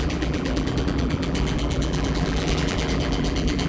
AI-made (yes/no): yes